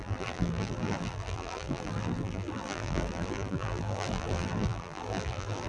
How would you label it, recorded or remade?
remade